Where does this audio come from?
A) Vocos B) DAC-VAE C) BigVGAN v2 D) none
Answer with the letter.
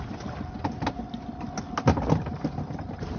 D